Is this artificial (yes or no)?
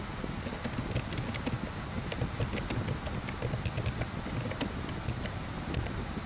no